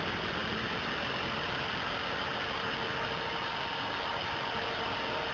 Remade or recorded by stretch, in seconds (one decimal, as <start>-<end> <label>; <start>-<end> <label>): 0.0-5.3 recorded